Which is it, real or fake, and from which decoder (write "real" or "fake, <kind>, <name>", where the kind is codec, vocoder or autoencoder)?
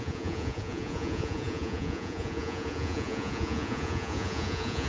fake, vocoder, Vocos